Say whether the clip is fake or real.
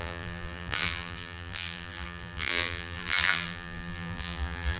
fake